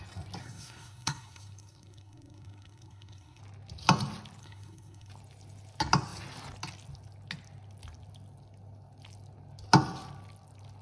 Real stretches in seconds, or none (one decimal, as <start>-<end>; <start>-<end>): 0.0-0.4; 3.4-4.4; 5.1-10.8